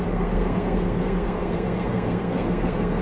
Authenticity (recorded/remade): remade